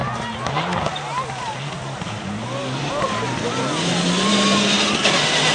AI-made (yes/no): no